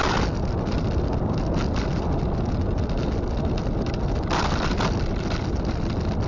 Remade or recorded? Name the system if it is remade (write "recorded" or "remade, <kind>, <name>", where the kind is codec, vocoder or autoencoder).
recorded